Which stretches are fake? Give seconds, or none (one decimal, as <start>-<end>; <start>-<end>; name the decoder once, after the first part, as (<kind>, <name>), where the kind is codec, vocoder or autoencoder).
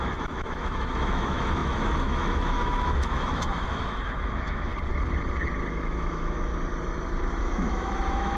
0.0-4.7 (autoencoder, DAC-VAE); 5.7-6.5; 7.4-8.4